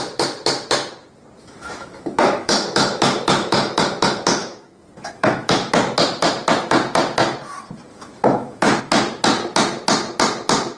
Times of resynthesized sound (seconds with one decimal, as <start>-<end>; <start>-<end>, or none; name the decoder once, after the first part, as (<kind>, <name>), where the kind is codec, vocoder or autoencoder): 1.4-3.8 (autoencoder, DAC-VAE); 4.4-5.7; 7.9-8.8